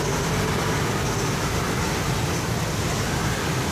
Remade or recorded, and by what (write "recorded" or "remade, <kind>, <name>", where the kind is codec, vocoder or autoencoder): recorded